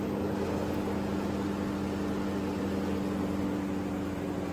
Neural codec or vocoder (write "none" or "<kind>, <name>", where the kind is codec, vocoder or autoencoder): none